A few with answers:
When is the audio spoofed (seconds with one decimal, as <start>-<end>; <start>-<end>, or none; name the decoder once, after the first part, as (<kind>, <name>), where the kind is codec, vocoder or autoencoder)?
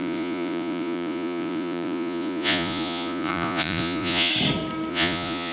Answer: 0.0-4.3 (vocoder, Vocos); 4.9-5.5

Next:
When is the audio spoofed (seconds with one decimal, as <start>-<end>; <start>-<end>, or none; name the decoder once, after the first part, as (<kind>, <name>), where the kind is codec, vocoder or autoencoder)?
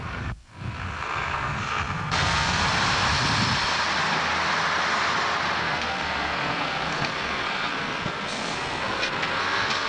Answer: 0.0-2.6 (codec, SNAC); 5.6-9.9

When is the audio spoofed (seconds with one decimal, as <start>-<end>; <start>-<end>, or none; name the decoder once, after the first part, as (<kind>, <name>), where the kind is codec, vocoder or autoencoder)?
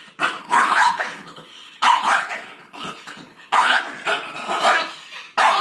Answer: 0.4-3.8 (codec, HILCodec)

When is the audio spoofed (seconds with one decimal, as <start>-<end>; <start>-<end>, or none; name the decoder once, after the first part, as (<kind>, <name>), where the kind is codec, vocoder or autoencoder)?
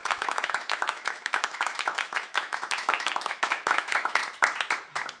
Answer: 0.0-4.2 (autoencoder, DAC-VAE)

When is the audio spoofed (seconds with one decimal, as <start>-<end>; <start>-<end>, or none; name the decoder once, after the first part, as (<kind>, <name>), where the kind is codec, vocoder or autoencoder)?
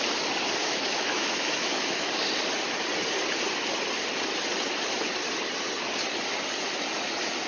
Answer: 0.6-2.1 (autoencoder, DAC-VAE)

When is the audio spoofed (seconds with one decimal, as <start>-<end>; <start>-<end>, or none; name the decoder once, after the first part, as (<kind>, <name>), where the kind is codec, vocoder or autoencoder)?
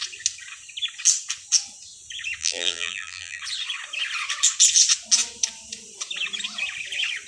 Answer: 2.4-3.4 (vocoder, BigVGAN v2)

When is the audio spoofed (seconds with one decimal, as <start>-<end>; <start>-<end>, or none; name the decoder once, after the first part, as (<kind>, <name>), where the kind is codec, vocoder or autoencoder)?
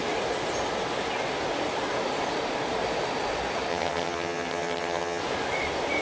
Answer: 3.7-5.2 (vocoder, HiFi-GAN)